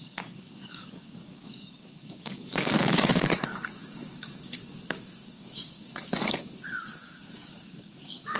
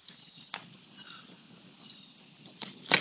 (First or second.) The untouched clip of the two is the second